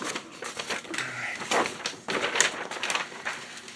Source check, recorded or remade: recorded